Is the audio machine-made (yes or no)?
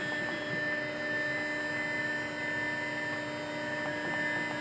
no